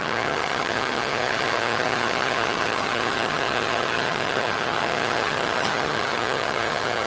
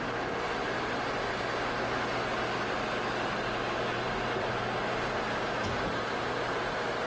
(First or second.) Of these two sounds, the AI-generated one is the first